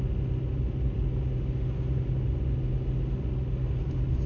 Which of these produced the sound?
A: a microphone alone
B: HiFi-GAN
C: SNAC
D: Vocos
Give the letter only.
A